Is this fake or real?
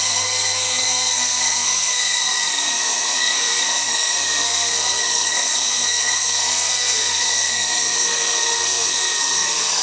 fake